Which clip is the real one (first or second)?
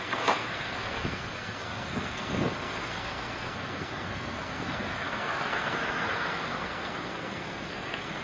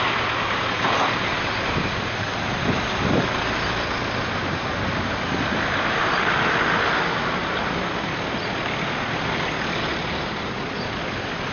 second